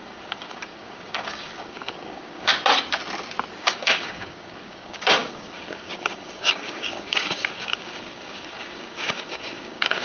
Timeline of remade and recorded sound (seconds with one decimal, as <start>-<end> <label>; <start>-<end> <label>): 0.0-2.5 remade; 2.5-3.5 recorded; 3.5-10.0 remade